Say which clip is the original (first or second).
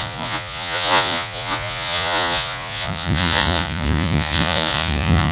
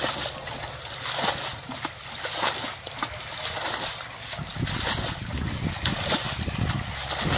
second